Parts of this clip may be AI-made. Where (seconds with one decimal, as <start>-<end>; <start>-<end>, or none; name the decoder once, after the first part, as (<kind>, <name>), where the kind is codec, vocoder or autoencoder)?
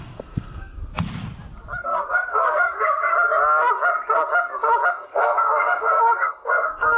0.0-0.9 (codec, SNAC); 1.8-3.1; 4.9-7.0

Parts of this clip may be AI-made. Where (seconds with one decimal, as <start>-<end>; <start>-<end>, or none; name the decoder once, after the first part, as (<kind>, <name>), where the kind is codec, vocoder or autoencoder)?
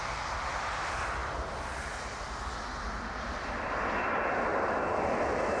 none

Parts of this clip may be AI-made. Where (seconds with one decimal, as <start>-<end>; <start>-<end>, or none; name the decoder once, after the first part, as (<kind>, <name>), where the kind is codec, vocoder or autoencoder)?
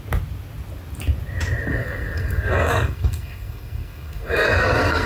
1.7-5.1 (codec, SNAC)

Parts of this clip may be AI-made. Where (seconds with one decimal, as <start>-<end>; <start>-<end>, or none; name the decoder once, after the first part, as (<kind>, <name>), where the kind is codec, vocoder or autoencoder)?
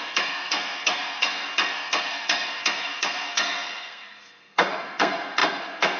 0.0-6.0 (codec, SNAC)